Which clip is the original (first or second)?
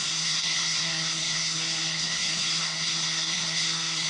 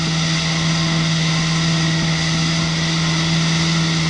second